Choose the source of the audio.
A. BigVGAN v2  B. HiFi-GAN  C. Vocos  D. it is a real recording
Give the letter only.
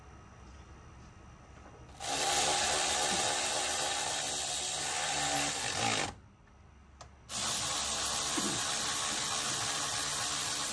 D